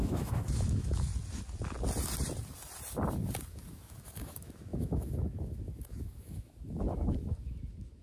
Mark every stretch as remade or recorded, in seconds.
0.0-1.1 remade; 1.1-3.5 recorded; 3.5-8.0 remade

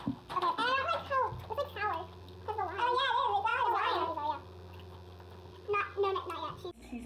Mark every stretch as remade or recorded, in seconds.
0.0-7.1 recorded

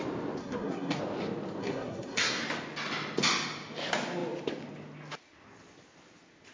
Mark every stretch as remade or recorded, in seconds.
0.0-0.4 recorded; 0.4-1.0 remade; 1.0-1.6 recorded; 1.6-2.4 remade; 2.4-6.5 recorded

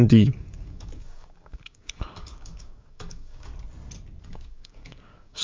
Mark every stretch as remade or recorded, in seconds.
0.0-3.5 remade; 3.5-4.2 recorded; 4.2-5.4 remade

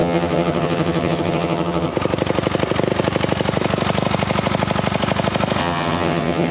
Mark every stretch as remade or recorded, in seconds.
0.0-1.9 remade; 1.9-5.6 recorded; 5.6-6.5 remade